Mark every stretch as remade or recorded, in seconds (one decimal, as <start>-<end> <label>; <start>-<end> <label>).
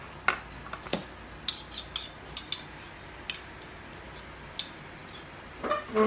0.0-6.1 recorded